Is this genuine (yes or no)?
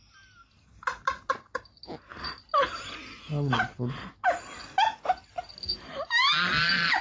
yes